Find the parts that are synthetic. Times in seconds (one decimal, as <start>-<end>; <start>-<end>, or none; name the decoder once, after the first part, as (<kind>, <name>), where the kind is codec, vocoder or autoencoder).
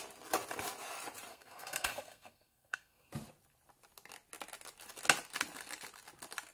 1.3-3.1 (codec, SNAC)